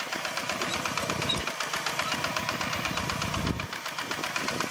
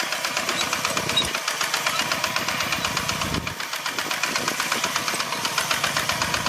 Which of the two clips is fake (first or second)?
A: first